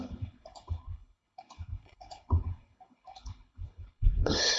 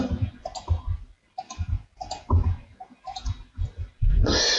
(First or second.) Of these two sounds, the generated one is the first